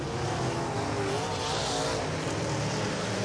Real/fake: real